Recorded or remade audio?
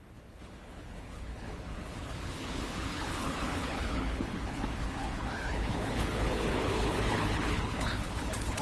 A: remade